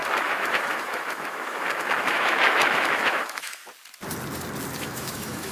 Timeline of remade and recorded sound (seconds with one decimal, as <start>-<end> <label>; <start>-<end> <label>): 0.0-3.6 remade; 3.6-4.8 recorded; 4.8-5.5 remade